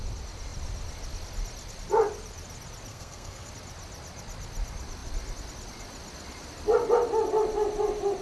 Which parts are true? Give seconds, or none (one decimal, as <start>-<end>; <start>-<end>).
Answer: 0.0-2.9; 3.5-8.2

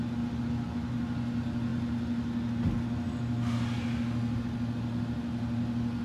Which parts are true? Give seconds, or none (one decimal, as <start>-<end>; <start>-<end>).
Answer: 0.0-6.0

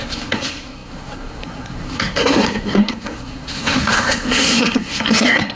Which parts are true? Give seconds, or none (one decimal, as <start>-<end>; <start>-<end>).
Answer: none

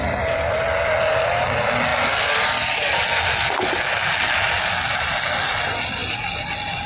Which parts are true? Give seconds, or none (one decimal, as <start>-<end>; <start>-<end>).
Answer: 0.0-6.9

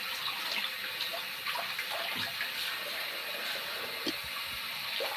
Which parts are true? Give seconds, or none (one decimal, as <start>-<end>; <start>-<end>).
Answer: 0.0-5.2

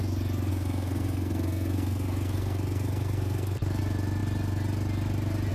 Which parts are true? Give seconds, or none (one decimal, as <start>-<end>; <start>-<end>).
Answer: 0.0-0.5; 3.8-5.5